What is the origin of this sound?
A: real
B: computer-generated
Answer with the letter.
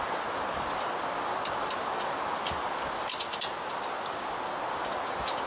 A